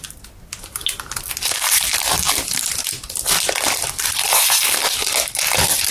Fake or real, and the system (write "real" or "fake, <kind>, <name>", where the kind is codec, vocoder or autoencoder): real